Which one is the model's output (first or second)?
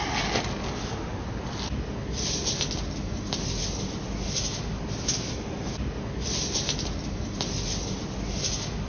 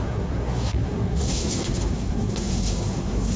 second